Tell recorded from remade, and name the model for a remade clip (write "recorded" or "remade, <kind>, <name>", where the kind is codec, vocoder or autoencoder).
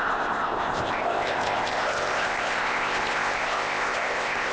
remade, codec, ZipCodec